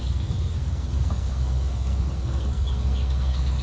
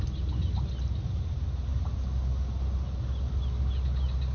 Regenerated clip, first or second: first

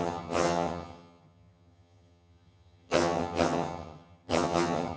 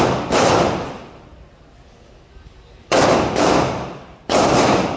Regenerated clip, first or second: first